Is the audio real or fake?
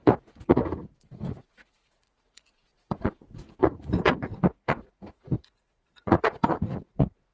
fake